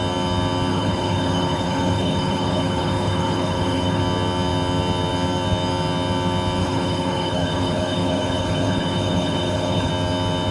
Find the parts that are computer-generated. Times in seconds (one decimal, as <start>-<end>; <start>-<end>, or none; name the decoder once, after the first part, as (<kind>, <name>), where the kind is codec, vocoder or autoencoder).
0.7-4.0 (codec, HILCodec); 6.6-9.9